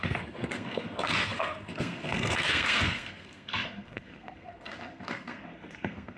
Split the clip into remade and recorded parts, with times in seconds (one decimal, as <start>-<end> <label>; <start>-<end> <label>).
0.0-6.2 remade